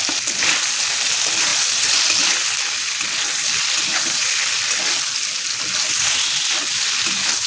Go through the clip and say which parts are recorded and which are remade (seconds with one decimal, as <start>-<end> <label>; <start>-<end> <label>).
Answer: 0.0-7.5 recorded